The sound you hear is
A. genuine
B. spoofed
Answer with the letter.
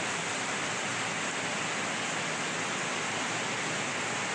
A